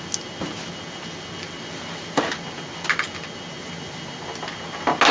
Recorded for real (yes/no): yes